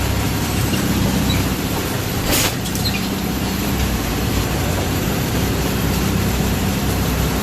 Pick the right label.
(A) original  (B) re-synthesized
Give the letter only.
B